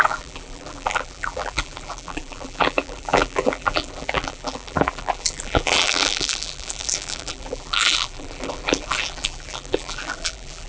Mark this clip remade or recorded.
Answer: remade